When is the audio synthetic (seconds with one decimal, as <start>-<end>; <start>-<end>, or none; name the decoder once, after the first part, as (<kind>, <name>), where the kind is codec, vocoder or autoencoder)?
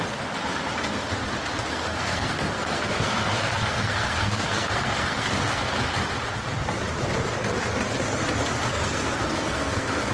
1.7-5.7 (codec, SNAC); 8.7-10.1